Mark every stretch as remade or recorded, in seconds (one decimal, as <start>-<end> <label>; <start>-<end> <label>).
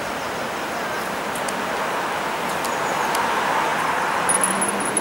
0.0-5.0 recorded